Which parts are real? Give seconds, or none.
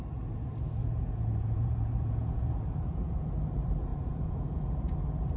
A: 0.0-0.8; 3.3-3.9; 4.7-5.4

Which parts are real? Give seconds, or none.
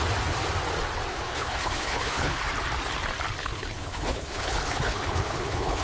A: 0.0-1.1; 2.4-3.4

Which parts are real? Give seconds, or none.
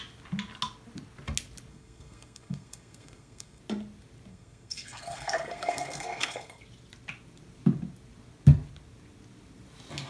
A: 0.0-1.7; 3.6-4.3; 6.6-10.1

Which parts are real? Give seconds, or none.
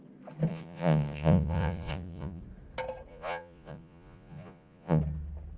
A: 0.0-0.5; 2.4-3.1; 5.0-5.6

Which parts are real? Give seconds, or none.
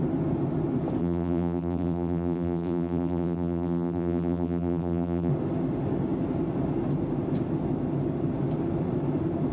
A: 0.0-1.0; 5.3-9.5